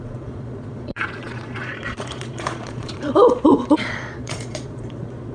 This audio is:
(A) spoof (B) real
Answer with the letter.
A